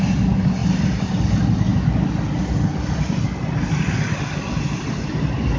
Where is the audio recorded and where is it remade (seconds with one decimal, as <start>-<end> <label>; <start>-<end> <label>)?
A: 0.0-5.6 recorded